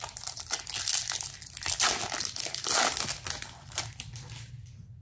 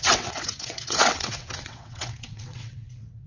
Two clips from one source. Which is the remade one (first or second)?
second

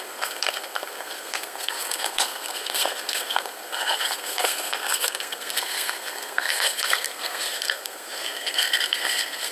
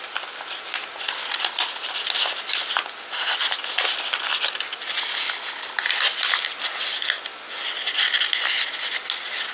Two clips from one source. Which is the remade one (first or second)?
first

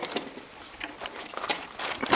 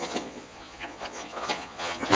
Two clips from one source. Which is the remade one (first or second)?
second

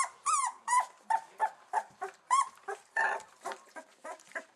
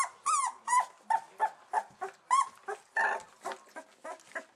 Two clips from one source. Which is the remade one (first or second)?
first